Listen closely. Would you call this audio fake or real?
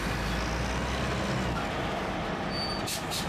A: real